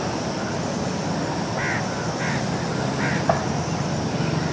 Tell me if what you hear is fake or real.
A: real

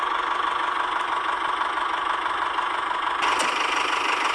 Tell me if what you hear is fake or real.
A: real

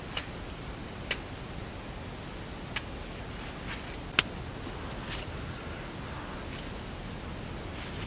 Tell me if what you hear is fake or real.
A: real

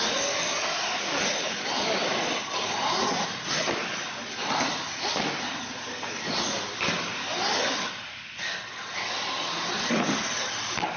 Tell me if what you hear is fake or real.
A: real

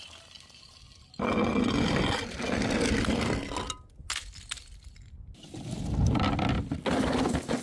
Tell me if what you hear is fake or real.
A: real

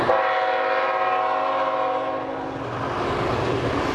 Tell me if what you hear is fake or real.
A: real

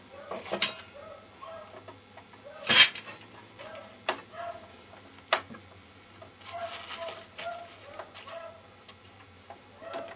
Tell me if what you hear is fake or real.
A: real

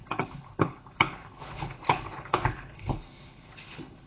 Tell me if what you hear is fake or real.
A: fake